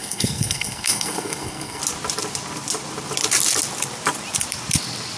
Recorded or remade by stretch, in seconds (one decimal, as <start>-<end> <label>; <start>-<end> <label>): 0.0-1.8 remade; 1.8-5.2 recorded